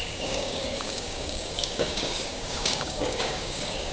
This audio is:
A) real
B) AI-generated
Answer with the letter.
B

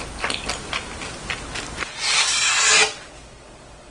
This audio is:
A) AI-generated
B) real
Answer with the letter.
B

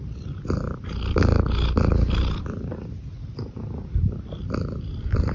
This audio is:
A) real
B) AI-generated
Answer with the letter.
A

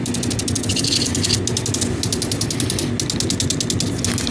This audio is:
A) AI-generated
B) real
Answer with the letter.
B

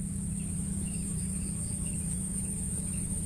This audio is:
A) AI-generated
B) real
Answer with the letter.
A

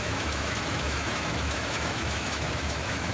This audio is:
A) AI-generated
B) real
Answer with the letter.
A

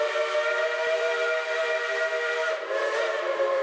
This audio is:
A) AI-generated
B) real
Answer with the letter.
A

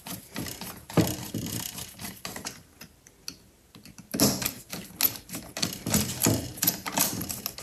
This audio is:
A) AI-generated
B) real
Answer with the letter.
B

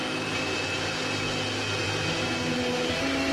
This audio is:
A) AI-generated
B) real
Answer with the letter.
B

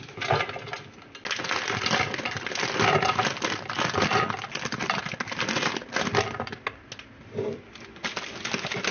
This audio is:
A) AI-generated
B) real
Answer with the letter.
B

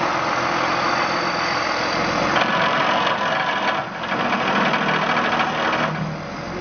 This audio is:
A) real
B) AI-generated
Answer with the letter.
A